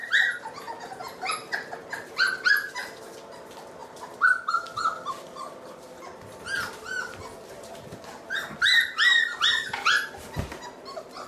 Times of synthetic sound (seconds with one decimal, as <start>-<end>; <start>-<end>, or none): none